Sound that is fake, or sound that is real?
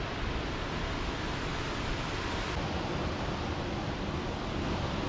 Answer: real